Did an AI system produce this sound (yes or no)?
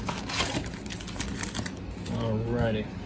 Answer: no